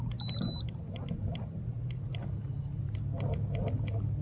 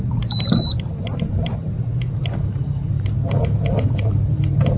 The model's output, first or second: second